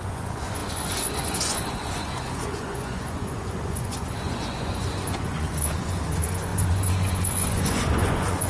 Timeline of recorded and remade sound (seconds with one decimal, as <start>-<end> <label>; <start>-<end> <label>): 0.0-8.5 remade